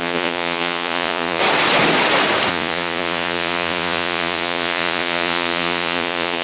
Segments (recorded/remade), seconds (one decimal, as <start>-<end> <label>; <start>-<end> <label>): 0.0-1.4 remade; 1.4-2.5 recorded; 2.5-6.4 remade

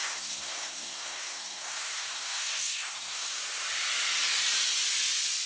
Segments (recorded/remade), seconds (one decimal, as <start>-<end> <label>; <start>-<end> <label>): 0.0-3.4 remade; 3.4-5.5 recorded

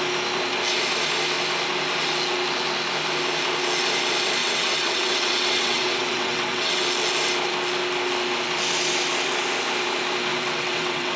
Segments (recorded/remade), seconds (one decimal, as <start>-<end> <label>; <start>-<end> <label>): 0.0-4.4 recorded; 4.4-6.8 remade; 6.8-10.3 recorded; 10.3-11.2 remade

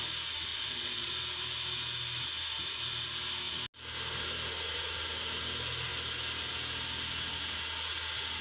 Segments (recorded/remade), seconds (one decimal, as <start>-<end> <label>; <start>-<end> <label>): 0.0-0.5 recorded; 0.5-1.1 remade; 1.1-8.4 recorded

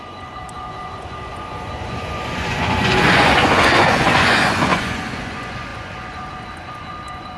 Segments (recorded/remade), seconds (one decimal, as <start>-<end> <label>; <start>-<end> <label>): 0.0-7.4 remade

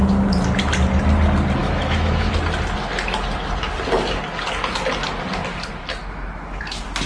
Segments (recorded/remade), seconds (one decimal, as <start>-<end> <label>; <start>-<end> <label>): 0.0-1.6 recorded; 1.6-2.3 remade; 2.3-6.0 recorded; 6.0-6.6 remade; 6.6-7.1 recorded

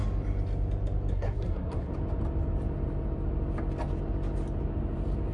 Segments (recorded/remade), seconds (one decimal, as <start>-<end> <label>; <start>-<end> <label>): 0.0-1.1 recorded; 1.1-1.9 remade; 1.9-5.3 recorded